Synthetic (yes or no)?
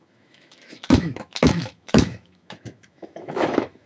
yes